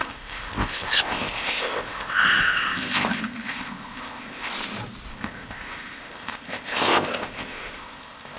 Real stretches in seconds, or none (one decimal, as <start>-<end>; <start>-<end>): 4.5-5.1